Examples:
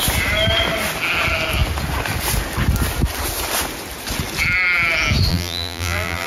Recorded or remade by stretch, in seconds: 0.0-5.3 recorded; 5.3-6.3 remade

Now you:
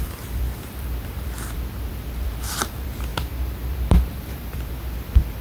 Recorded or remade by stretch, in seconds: 0.0-3.1 remade; 3.1-4.1 recorded; 4.1-5.4 remade

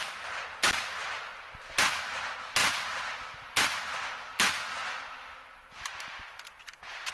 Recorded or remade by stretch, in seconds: 0.0-1.0 recorded; 1.0-1.5 remade; 1.5-2.6 recorded; 2.6-6.6 remade; 6.6-7.1 recorded

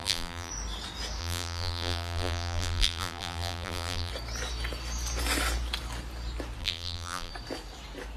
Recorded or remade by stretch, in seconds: 0.0-0.5 remade; 0.5-1.2 recorded; 1.2-4.1 remade; 4.1-6.6 recorded; 6.6-7.3 remade; 7.3-8.2 recorded

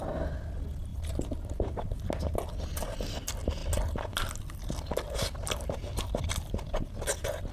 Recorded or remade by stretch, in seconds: 0.0-0.9 recorded; 0.9-2.0 remade; 2.0-7.5 recorded

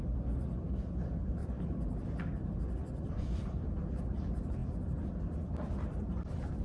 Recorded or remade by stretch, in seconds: 0.0-1.4 remade; 1.4-2.6 recorded; 2.6-4.6 remade; 4.6-5.5 recorded; 5.5-6.6 remade

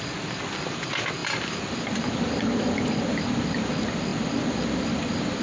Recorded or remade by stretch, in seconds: 0.0-1.2 recorded; 1.2-1.7 remade; 1.7-5.4 recorded

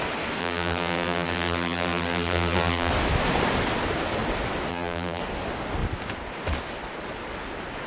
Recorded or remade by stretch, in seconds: 0.0-0.4 recorded; 0.4-2.9 remade; 2.9-4.7 recorded; 4.7-5.2 remade; 5.2-7.9 recorded